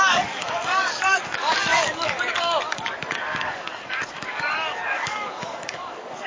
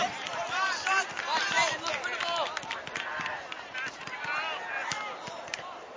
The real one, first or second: second